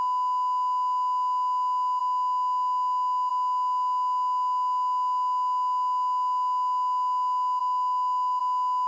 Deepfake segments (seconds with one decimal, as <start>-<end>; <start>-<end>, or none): 7.6-8.4

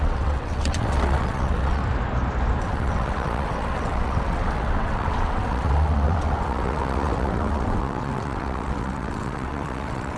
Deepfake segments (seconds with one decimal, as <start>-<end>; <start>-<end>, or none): 0.0-1.8; 2.6-10.2

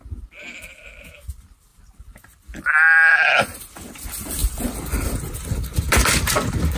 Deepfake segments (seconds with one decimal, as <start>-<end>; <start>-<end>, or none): 0.0-1.7; 3.1-6.8

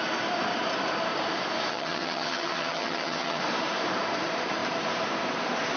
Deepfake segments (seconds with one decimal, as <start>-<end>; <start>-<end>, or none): 1.7-3.4

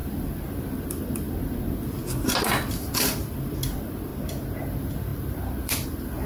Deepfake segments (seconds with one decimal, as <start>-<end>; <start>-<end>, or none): 0.0-4.1; 4.6-6.3

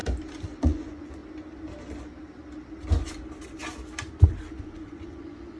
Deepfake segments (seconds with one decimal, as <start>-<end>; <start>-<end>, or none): 0.6-1.2; 4.6-5.6

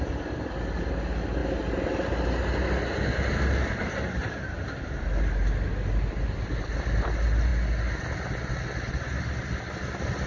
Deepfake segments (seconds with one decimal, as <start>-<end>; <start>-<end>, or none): none

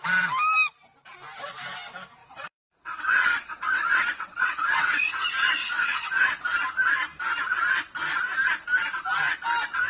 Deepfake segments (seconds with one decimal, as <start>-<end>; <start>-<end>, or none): 2.2-5.1; 5.6-6.4